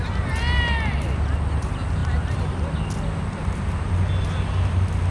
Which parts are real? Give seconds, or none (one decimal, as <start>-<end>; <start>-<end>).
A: 0.0-5.1